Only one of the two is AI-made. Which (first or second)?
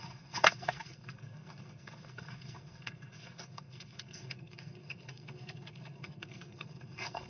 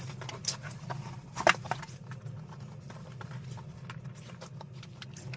first